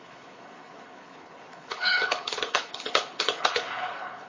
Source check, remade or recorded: remade